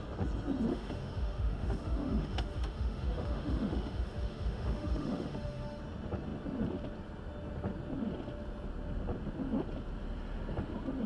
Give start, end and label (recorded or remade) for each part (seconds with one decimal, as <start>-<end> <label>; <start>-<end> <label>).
0.0-0.7 recorded; 0.7-5.8 remade; 5.8-11.1 recorded